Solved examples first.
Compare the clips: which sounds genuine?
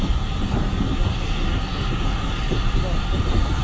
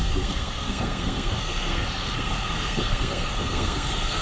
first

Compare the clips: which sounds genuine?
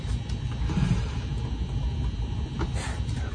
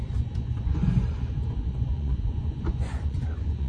first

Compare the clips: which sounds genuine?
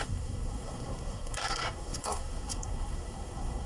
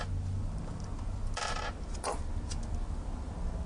second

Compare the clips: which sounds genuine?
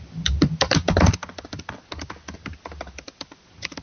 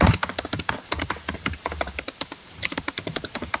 first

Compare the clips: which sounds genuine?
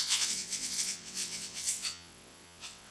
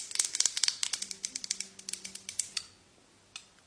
second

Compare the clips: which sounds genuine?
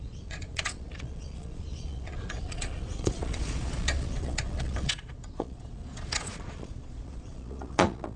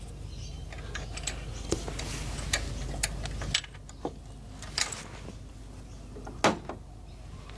second